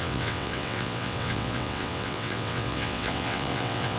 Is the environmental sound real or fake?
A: fake